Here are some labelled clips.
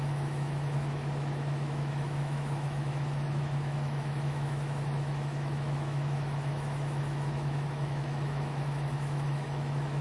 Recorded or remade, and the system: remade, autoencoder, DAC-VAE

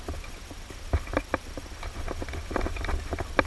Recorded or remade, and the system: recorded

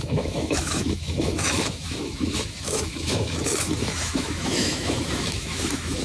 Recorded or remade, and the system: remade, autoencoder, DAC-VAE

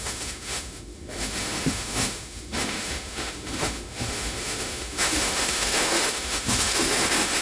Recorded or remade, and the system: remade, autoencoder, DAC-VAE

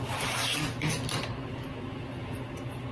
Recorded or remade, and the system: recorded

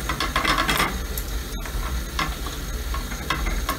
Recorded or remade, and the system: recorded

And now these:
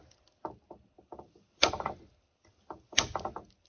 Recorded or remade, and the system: recorded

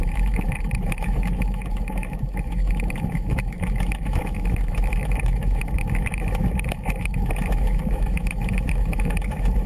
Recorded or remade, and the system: remade, autoencoder, DAC-VAE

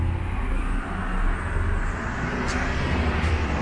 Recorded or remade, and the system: recorded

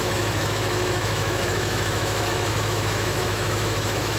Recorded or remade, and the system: remade, autoencoder, DAC-VAE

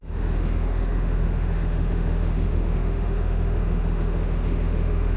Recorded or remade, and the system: remade, autoencoder, DAC-VAE